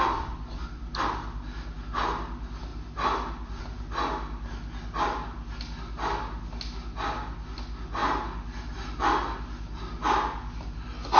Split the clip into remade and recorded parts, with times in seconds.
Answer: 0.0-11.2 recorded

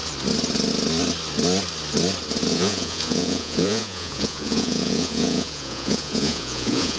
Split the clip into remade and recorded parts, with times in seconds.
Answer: 0.0-2.5 recorded; 2.5-7.0 remade

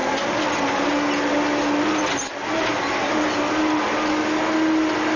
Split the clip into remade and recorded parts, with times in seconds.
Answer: 0.0-5.2 recorded